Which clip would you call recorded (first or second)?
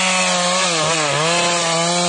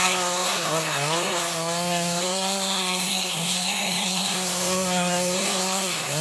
first